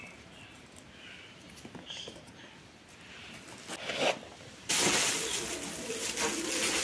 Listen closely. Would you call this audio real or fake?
real